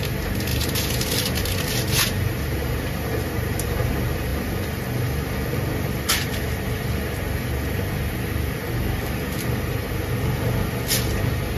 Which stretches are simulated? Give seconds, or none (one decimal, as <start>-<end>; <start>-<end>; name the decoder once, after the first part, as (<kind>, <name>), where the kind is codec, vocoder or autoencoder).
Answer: 0.5-3.9 (vocoder, BigVGAN v2)

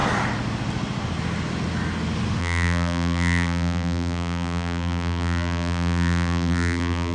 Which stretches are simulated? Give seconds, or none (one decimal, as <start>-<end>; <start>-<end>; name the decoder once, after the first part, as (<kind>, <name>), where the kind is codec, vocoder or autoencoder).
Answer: 2.4-7.1 (vocoder, BigVGAN v2)

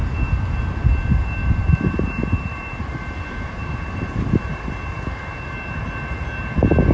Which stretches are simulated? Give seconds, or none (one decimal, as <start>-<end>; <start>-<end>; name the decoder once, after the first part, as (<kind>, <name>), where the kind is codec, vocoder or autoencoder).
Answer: 1.4-4.7 (vocoder, BigVGAN v2)